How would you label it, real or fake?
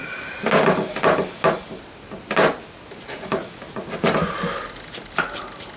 real